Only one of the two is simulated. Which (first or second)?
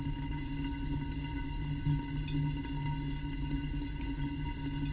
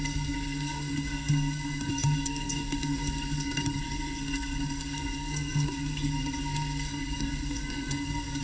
second